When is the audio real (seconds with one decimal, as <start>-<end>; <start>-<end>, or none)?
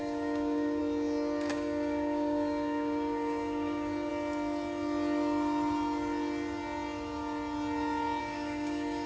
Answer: 0.8-1.5; 4.1-8.2